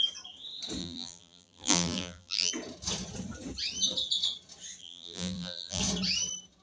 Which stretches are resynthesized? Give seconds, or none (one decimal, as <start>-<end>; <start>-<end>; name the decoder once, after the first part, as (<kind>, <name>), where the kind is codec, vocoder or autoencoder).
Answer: 0.8-2.5 (vocoder, BigVGAN v2); 4.8-5.8